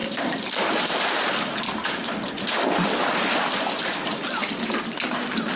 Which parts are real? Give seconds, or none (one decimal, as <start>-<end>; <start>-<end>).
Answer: 0.0-5.6